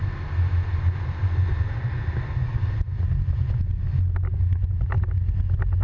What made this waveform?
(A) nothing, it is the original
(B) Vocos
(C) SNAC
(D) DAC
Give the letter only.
A